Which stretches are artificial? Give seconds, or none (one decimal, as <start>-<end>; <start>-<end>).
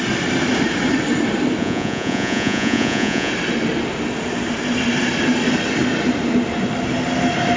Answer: 1.6-3.3